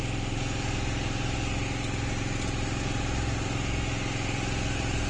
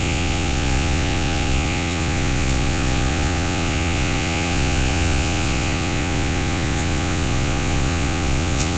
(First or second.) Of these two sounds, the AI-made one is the second